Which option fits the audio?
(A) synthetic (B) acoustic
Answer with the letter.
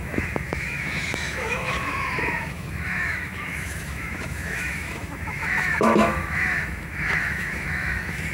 A